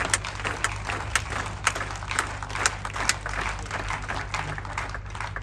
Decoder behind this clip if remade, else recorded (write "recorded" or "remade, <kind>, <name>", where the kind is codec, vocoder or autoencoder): recorded